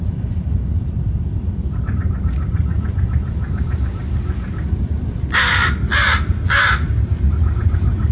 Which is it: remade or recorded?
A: recorded